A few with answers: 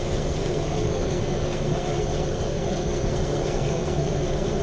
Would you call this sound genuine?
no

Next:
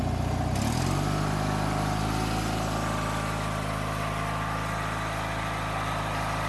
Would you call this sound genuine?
yes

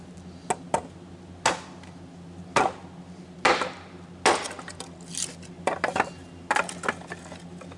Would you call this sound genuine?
yes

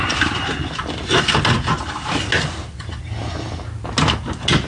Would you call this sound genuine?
yes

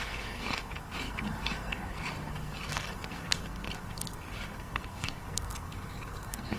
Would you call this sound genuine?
no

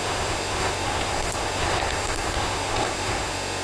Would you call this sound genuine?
no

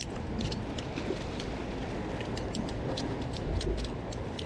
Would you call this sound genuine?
yes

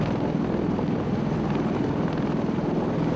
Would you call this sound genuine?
yes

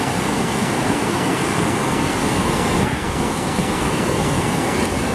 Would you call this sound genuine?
no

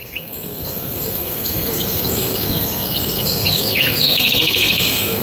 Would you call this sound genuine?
no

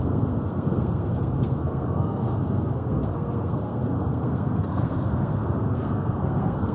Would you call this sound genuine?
no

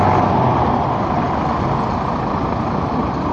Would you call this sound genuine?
yes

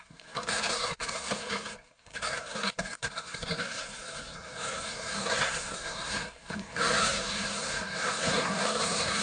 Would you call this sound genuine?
no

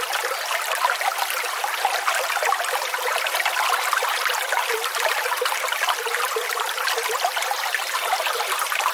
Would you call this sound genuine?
yes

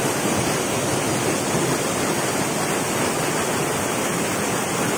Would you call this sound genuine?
yes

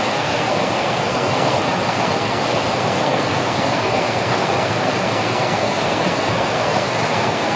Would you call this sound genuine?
no